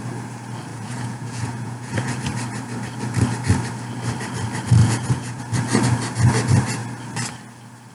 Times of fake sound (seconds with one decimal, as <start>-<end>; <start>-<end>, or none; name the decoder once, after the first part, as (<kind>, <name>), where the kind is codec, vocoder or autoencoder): 0.7-2.2 (vocoder, Vocos); 4.8-5.4